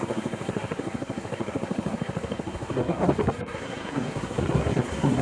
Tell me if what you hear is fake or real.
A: fake